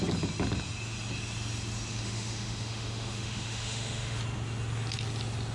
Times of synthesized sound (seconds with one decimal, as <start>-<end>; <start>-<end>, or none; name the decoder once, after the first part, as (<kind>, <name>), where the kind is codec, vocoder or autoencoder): 1.9-4.2 (autoencoder, DAC-VAE)